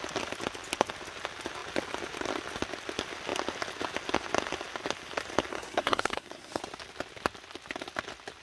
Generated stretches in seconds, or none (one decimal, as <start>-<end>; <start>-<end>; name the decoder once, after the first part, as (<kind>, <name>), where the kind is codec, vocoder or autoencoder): 5.5-6.6 (codec, SNAC)